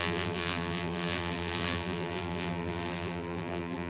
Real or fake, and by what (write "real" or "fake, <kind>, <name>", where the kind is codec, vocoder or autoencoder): fake, vocoder, BigVGAN v2